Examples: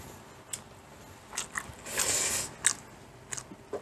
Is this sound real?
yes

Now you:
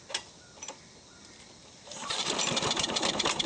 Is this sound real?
no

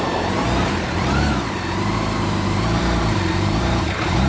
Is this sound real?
no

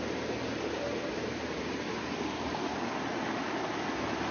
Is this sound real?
yes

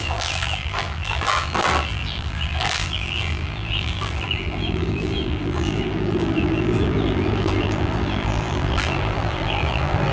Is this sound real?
no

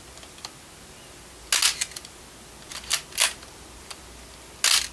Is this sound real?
yes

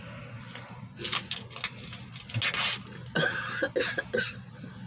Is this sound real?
yes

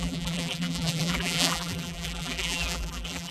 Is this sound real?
no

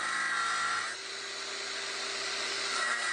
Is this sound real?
yes